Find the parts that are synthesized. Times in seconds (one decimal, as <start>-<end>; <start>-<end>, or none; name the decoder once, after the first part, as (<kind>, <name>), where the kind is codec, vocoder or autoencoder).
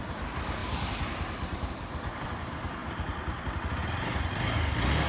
0.0-2.8 (vocoder, BigVGAN v2); 4.3-5.1